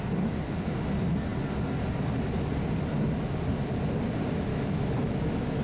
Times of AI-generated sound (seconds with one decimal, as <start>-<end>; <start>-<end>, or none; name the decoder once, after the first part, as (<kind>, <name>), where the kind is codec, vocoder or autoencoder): 4.5-5.6 (autoencoder, DAC-VAE)